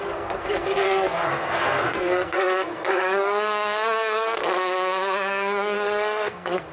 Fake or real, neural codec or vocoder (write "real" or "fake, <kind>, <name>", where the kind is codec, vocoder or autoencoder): fake, codec, SNAC